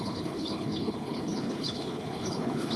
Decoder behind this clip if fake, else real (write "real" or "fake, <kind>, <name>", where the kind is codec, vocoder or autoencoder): fake, codec, HILCodec